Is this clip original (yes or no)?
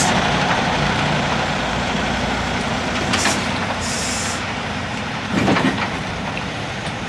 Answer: no